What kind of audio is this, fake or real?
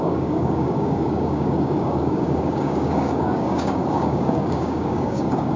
fake